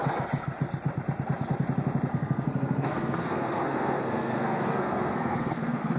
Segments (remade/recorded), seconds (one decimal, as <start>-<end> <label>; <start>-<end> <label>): 0.0-2.1 recorded; 2.1-6.0 remade